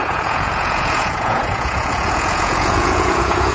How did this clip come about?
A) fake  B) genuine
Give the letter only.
A